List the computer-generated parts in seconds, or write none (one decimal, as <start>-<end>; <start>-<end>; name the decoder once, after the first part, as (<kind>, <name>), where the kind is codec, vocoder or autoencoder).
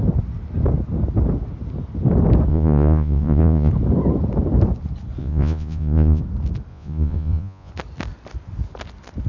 2.5-3.7 (vocoder, Vocos); 5.2-6.2; 6.7-7.7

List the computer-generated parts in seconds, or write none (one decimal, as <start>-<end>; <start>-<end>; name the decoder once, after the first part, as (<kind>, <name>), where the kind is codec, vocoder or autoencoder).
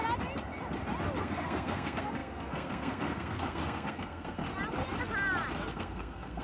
1.2-4.4 (codec, SNAC); 5.7-6.4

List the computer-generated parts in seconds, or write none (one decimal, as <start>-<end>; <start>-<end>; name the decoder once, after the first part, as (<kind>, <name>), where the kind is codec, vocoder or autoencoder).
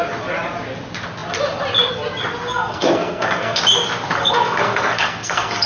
2.5-3.6 (codec, SNAC); 4.2-5.7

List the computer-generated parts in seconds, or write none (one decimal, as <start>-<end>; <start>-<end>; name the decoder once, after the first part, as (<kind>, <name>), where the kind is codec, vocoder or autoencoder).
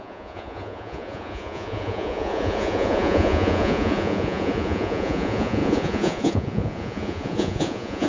0.0-8.1 (vocoder, Vocos)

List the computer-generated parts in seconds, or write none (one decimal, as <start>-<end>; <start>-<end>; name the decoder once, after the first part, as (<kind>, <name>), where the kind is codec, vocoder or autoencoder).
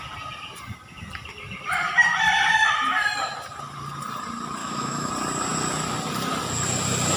4.6-5.1 (autoencoder, DAC-VAE)